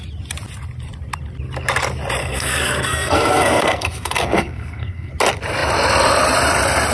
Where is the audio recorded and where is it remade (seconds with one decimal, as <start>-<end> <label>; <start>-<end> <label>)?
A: 0.0-2.2 recorded; 2.2-5.1 remade; 5.1-6.9 recorded